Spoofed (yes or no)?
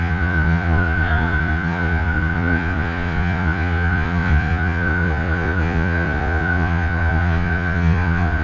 yes